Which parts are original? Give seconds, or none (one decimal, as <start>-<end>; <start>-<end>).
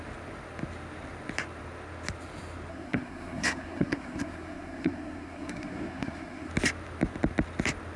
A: 0.0-2.7; 6.5-8.0